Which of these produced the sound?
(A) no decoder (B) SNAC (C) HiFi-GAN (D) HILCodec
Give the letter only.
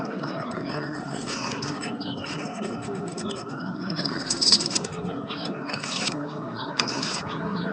B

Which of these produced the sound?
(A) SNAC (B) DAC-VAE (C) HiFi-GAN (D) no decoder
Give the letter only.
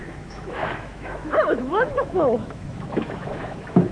B